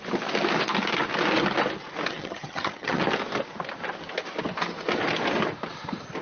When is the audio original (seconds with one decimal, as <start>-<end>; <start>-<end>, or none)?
0.0-2.1; 3.0-6.2